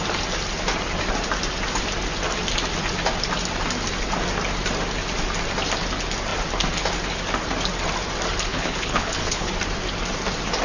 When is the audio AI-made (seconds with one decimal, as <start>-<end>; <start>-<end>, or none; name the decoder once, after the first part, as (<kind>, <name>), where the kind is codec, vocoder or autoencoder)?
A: 8.5-9.5 (codec, HILCodec)